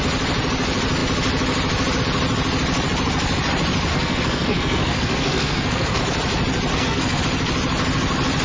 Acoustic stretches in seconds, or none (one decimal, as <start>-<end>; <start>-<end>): 0.0-3.9; 6.0-6.7; 7.2-8.4